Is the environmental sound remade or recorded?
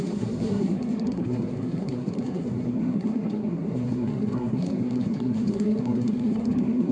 remade